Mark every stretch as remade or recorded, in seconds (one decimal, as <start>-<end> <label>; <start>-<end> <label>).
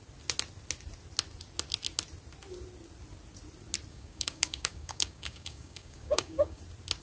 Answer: 0.0-3.9 recorded; 3.9-6.6 remade; 6.6-7.0 recorded